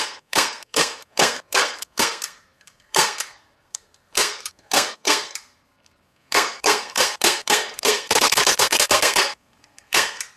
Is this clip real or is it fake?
fake